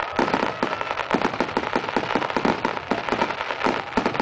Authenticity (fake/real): real